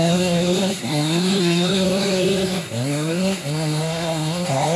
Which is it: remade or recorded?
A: remade